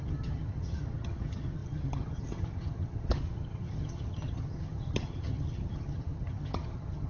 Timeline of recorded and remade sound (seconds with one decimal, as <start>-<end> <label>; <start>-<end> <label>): 0.0-7.1 remade